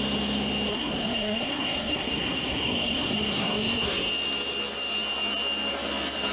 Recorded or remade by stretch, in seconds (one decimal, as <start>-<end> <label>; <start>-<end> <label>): 0.0-0.7 recorded; 0.7-4.1 remade; 4.1-6.3 recorded